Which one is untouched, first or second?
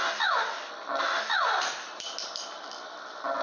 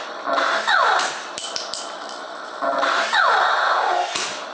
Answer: first